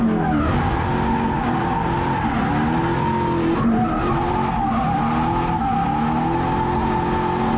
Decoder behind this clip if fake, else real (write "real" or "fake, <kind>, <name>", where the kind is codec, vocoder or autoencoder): real